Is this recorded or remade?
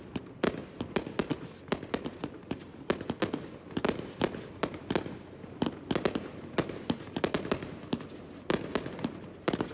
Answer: recorded